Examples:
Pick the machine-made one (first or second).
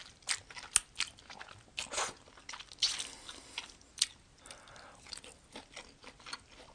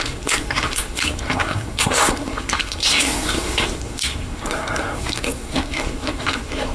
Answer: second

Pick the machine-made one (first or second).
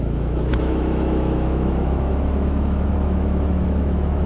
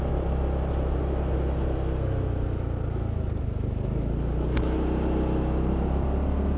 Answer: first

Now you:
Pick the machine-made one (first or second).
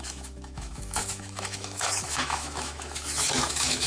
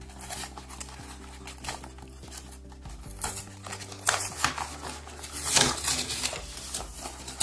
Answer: first